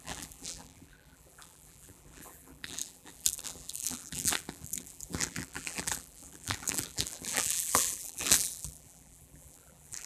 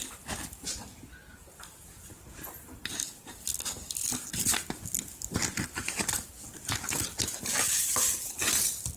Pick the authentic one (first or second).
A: second